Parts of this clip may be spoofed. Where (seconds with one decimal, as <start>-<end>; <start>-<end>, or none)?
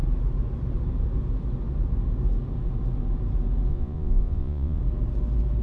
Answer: 3.7-4.8